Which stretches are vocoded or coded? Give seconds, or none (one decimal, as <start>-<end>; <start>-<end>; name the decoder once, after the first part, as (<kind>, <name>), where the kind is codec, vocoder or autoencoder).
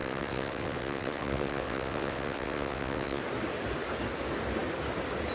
0.0-3.2 (vocoder, WaveNeXt)